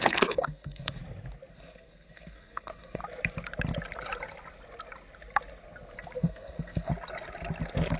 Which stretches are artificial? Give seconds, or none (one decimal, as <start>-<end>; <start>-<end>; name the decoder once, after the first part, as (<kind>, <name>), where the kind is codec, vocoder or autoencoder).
0.0-1.0 (codec, SNAC); 1.5-3.0; 6.2-6.9